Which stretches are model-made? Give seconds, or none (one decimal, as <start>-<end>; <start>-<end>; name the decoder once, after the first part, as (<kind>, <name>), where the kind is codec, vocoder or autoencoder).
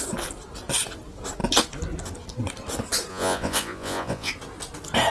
3.1-4.3 (vocoder, Vocos)